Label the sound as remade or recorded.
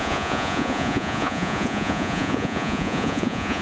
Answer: remade